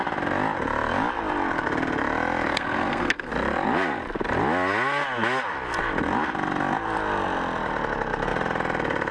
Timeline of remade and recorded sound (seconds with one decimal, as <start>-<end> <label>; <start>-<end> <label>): 0.0-2.5 recorded; 2.5-3.3 remade; 3.3-9.1 recorded